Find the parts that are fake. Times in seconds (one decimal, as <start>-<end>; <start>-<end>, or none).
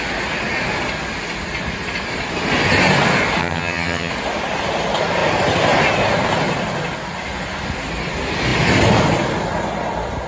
3.4-4.1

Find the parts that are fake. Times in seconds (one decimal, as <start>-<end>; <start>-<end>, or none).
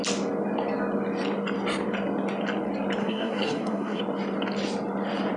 3.0-4.0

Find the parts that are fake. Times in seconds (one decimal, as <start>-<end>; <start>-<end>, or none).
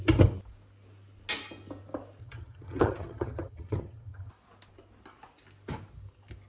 2.2-4.3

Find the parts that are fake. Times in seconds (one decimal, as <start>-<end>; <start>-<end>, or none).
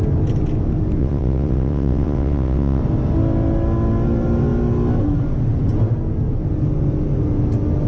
1.0-2.8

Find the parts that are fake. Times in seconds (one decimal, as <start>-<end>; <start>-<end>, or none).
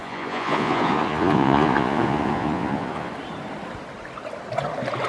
0.0-3.1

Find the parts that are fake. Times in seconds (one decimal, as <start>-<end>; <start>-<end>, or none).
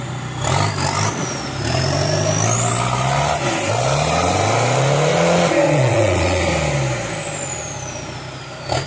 5.1-6.4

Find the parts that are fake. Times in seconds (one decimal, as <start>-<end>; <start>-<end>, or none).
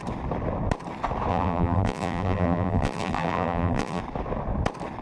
1.3-4.0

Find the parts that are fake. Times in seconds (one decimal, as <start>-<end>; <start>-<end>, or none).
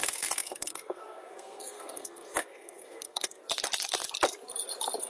0.0-3.4